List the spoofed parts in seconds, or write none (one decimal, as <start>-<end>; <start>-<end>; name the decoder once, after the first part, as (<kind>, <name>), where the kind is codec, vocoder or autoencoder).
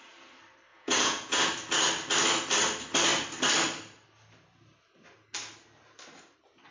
0.7-1.4 (vocoder, Vocos)